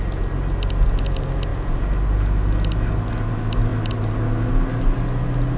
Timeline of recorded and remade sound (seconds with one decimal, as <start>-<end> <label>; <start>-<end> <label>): 0.0-5.6 recorded